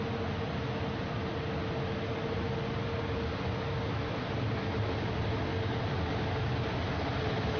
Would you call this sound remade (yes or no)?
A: no